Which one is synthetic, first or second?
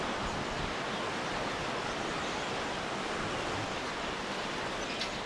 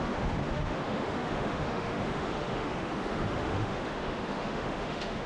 second